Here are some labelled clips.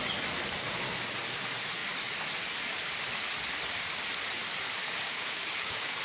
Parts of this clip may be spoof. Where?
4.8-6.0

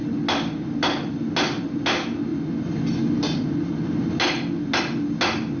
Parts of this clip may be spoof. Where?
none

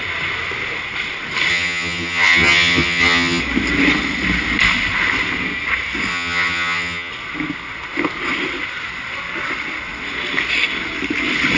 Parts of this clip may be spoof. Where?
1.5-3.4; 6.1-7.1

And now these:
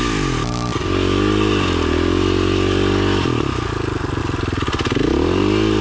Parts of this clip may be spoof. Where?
none

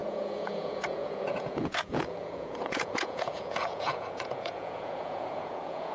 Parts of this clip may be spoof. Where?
0.0-5.9